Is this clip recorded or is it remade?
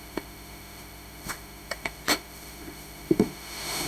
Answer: remade